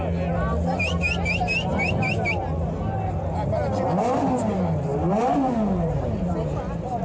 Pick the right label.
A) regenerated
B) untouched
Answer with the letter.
B